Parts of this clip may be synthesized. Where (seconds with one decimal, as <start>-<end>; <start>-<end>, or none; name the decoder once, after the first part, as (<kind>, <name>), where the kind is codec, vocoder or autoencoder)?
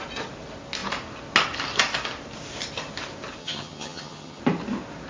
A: 3.4-4.4 (vocoder, HiFi-GAN)